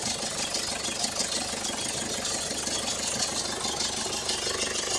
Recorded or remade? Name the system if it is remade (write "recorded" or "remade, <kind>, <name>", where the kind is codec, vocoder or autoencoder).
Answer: recorded